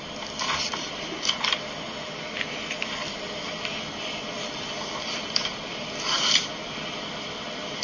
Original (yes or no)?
no